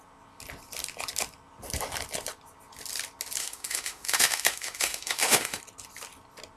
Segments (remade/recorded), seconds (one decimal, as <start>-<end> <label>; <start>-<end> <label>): 0.0-3.4 recorded; 3.4-5.6 remade; 5.6-6.6 recorded